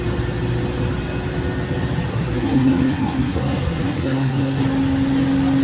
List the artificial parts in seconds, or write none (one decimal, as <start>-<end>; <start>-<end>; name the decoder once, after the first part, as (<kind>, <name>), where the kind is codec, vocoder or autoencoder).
2.1-4.6 (codec, SNAC)